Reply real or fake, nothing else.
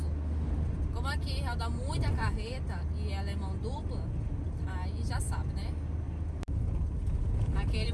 real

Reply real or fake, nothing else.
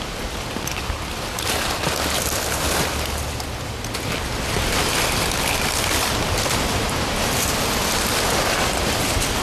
real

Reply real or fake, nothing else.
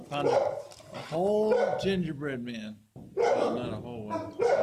real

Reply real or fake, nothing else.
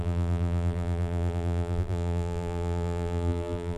fake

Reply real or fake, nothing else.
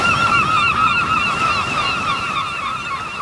real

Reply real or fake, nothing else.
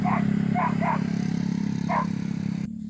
fake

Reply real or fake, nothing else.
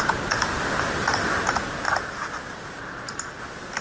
real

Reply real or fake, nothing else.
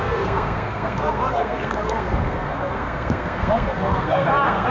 fake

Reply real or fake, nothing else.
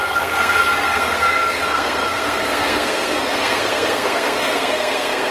fake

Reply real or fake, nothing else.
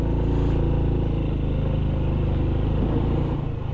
real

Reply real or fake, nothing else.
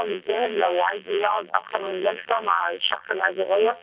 fake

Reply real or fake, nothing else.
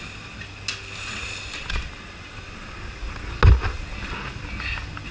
real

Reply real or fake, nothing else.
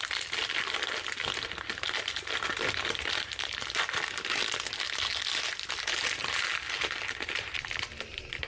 real